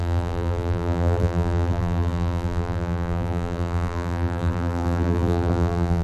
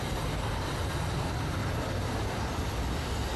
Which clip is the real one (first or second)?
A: second